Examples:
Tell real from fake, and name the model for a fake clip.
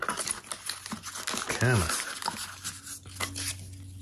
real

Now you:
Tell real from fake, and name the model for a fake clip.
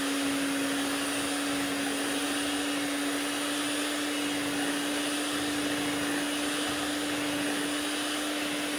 real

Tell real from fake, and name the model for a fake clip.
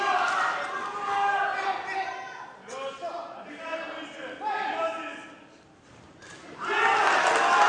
real